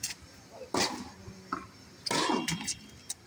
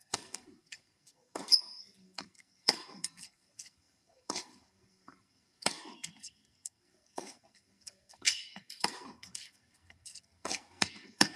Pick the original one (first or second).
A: first